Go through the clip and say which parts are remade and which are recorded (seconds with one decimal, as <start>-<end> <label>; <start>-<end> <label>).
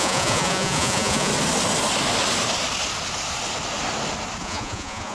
0.0-1.3 remade; 1.3-4.4 recorded; 4.4-5.1 remade